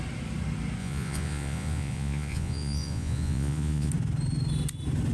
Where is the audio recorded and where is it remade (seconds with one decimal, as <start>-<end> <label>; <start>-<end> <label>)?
0.0-0.8 recorded; 0.8-3.9 remade; 3.9-5.1 recorded

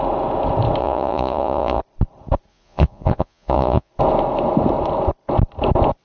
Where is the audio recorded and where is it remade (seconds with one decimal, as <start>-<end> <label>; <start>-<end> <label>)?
0.0-0.8 recorded; 0.8-1.8 remade; 1.8-2.5 recorded; 2.5-3.9 remade; 3.9-6.0 recorded

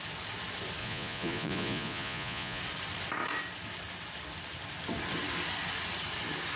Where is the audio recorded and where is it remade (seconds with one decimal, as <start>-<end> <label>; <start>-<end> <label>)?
0.0-0.8 recorded; 0.8-2.6 remade; 2.6-6.6 recorded

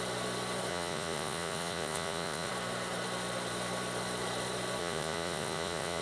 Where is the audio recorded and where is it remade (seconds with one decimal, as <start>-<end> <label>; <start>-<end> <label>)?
0.0-0.7 recorded; 0.7-2.5 remade; 2.5-4.8 recorded; 4.8-6.0 remade

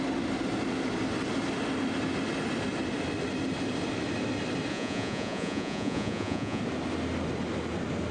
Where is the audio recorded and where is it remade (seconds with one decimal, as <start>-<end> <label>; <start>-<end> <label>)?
0.0-4.7 recorded; 4.7-6.6 remade; 6.6-8.1 recorded